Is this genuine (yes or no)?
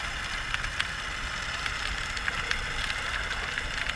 yes